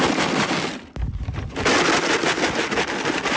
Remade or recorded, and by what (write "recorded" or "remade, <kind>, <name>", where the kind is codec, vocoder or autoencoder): recorded